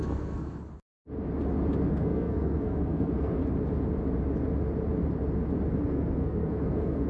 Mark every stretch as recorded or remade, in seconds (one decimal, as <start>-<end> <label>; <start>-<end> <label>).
0.0-0.7 remade; 0.7-1.9 recorded; 1.9-3.4 remade; 3.4-5.7 recorded; 5.7-7.1 remade